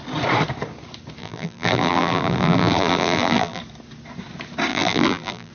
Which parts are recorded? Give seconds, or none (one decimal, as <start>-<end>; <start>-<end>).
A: 0.0-1.2; 3.6-4.7

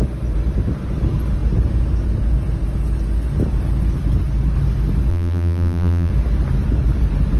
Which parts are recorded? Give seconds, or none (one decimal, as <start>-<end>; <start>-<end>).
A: 0.0-5.1; 6.1-7.4